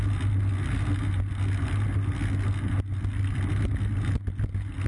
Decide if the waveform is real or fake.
real